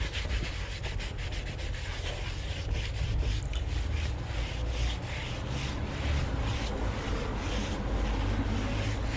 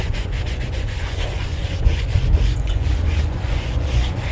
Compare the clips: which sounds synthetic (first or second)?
second